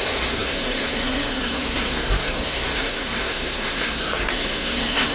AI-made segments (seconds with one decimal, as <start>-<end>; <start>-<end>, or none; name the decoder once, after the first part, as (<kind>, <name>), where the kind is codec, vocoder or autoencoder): 0.0-5.1 (codec, SNAC)